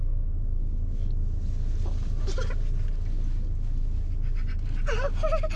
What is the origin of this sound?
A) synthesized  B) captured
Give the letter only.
B